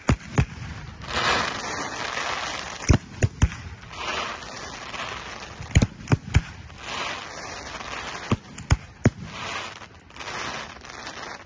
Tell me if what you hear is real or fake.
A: real